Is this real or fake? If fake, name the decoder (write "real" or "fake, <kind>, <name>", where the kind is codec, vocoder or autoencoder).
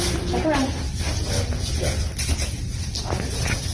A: real